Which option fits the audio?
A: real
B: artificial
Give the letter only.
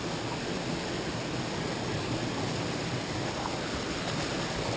A